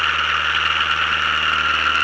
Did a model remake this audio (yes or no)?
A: no